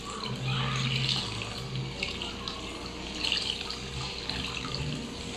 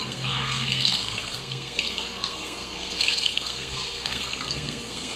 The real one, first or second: first